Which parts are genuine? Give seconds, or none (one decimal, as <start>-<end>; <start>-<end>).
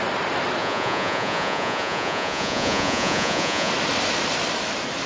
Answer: 0.0-0.6; 3.7-5.1